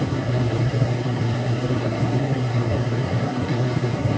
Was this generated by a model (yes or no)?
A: yes